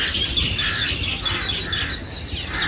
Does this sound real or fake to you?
real